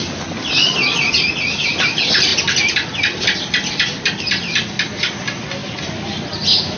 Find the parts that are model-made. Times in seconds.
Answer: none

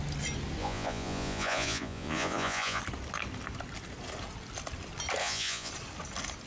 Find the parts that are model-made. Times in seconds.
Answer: 0.6-2.8 (vocoder, Vocos); 5.2-5.7

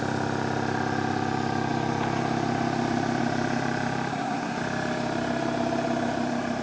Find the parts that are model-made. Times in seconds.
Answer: 4.1-4.6 (codec, SNAC)

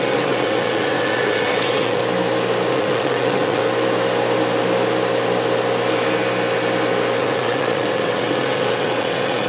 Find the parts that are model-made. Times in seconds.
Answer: 0.0-2.0 (vocoder, WaveNeXt); 2.7-3.6; 7.2-9.5

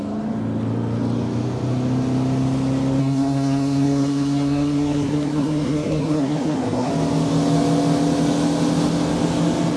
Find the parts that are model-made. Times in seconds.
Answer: 3.0-6.9 (codec, SNAC)

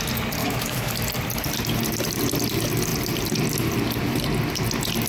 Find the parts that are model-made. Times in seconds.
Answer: 0.4-0.9 (autoencoder, DAC-VAE)